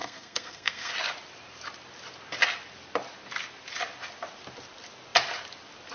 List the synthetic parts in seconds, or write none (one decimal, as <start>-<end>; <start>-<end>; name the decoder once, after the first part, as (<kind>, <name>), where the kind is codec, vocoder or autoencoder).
0.0-0.9 (codec, SNAC)